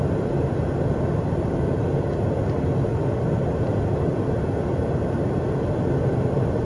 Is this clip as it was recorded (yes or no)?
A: yes